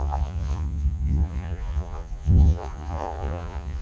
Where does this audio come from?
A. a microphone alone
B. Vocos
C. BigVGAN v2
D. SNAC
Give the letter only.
B